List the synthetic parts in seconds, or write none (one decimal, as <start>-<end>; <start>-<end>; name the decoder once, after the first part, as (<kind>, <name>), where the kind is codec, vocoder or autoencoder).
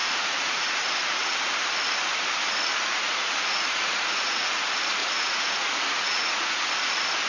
0.0-0.7 (vocoder, Vocos); 2.7-4.5; 5.0-6.5